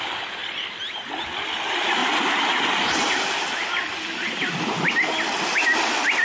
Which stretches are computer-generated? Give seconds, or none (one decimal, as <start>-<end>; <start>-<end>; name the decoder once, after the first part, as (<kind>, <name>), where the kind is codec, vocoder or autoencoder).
none